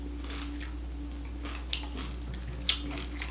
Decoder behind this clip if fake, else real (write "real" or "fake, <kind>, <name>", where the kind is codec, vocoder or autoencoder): real